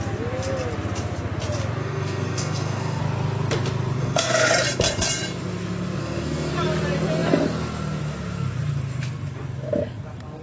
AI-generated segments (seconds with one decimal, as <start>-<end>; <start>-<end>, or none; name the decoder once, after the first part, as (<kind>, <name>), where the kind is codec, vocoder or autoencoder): 1.8-3.0 (codec, SNAC); 4.0-4.5; 6.0-6.5